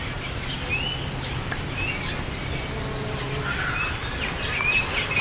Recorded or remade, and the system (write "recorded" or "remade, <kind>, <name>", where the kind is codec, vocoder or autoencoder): recorded